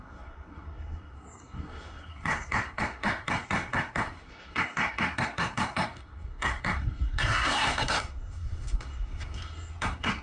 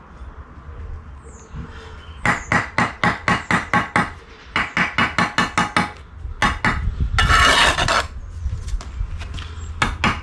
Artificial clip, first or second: first